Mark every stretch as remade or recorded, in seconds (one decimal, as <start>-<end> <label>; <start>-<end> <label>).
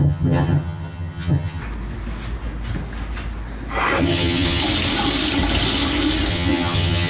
0.0-1.6 remade; 1.6-4.0 recorded; 4.0-4.6 remade; 4.6-6.3 recorded; 6.3-7.1 remade